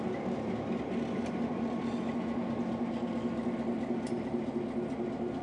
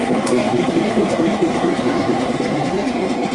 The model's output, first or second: second